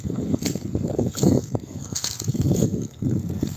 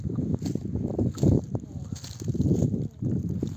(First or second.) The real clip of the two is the second